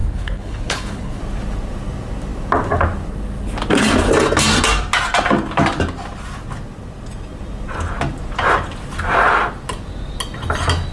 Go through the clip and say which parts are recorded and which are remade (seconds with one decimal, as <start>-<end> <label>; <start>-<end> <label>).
0.0-1.2 remade; 1.2-10.9 recorded